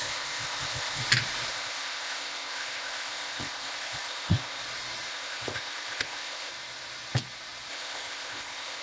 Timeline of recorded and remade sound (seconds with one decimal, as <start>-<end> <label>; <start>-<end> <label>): 0.0-1.0 remade; 1.0-1.5 recorded; 1.5-4.6 remade; 4.6-5.1 recorded; 5.1-6.5 remade; 6.5-7.7 recorded; 7.7-8.8 remade